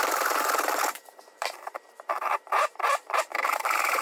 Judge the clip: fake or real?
fake